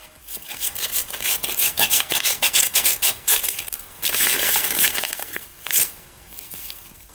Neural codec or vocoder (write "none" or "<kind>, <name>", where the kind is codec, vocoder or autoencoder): codec, SNAC